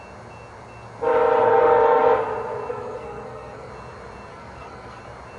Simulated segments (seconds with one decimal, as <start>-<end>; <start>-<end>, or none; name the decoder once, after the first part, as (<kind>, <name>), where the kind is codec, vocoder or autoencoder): 1.4-2.0 (codec, SNAC); 2.7-3.7; 4.3-5.0